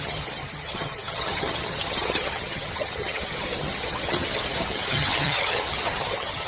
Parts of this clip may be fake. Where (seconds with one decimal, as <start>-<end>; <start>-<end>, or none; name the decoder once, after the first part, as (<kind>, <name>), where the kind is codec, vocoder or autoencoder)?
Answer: 0.0-6.5 (vocoder, HiFi-GAN)